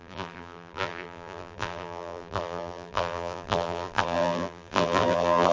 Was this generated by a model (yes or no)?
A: yes